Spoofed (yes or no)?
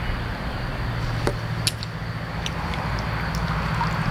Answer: no